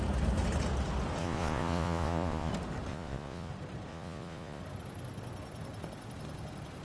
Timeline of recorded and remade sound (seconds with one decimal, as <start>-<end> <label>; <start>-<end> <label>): 0.0-1.2 recorded; 1.2-2.5 remade; 2.5-2.9 recorded; 2.9-3.5 remade; 3.5-3.9 recorded; 3.9-4.6 remade; 4.6-6.8 recorded